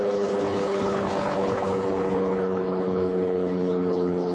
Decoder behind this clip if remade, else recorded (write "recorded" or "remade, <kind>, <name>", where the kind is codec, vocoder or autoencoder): remade, codec, HILCodec